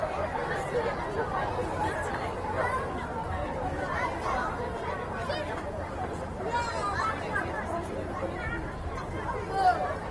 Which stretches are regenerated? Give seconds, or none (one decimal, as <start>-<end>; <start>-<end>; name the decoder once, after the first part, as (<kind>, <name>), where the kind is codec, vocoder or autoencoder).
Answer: 2.1-3.6 (vocoder, BigVGAN v2); 6.8-8.2